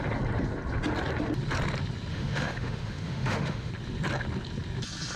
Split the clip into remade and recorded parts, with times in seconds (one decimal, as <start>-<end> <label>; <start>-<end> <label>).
0.0-2.1 recorded; 2.1-3.7 remade; 3.7-5.2 recorded